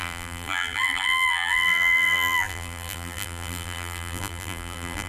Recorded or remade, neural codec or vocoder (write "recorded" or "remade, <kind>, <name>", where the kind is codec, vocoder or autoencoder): remade, vocoder, BigVGAN v2